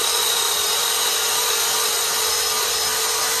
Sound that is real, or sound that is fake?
fake